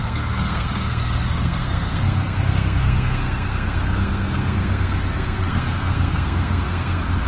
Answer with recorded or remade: remade